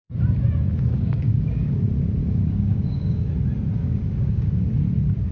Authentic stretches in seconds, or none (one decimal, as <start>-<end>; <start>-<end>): 0.0-0.9; 1.7-2.2; 3.3-3.8; 4.7-5.3